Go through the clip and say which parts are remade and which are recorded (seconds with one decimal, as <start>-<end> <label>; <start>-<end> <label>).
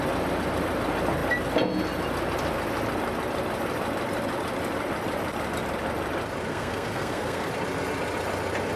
0.0-6.5 recorded; 6.5-7.5 remade; 7.5-8.8 recorded